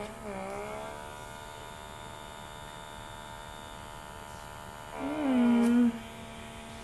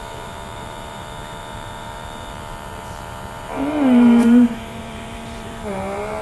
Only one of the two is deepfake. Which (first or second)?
second